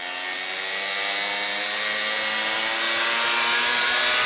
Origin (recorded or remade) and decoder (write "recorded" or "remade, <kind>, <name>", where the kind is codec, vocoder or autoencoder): recorded